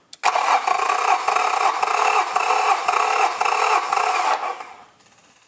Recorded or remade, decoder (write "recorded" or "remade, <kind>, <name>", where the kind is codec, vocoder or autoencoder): recorded